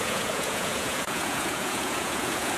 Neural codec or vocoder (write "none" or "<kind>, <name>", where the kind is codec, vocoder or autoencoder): vocoder, Vocos